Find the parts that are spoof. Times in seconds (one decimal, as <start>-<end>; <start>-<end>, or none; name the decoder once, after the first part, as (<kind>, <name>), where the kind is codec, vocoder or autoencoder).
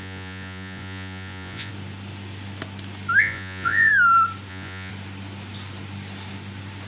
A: 0.0-1.7 (vocoder, Vocos); 3.2-3.9; 4.5-4.9